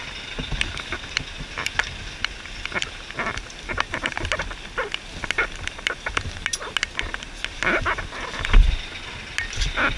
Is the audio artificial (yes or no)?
no